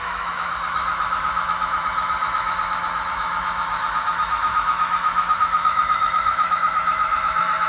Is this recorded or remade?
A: remade